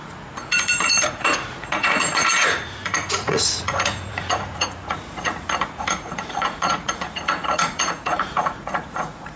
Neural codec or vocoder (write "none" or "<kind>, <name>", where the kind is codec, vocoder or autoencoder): vocoder, Vocos